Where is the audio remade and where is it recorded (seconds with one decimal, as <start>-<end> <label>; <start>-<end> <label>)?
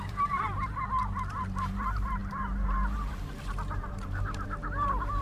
0.0-5.2 remade